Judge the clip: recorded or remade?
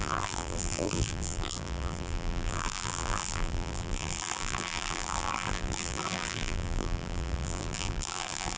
remade